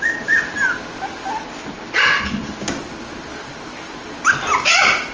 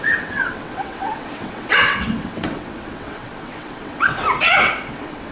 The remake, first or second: second